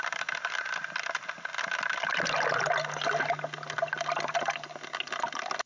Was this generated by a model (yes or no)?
no